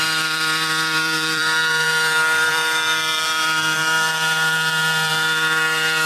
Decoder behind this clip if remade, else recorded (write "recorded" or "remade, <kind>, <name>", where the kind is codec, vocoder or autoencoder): remade, vocoder, BigVGAN v2